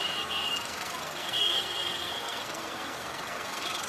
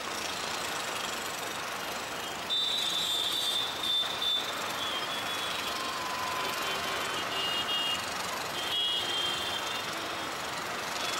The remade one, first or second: first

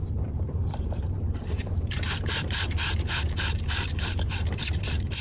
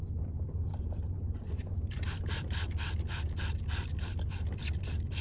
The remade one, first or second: first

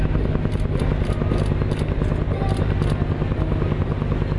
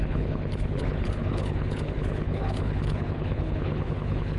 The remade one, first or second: second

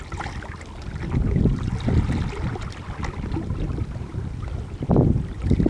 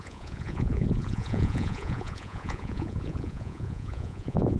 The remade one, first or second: second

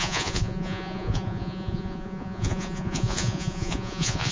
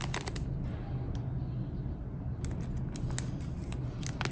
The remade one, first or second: first